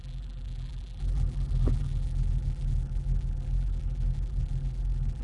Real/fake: fake